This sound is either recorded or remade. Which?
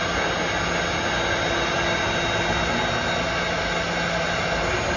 recorded